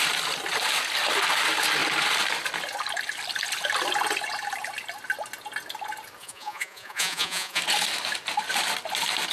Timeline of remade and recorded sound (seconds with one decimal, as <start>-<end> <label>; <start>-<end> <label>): 0.0-6.2 recorded; 6.2-7.6 remade; 7.6-9.3 recorded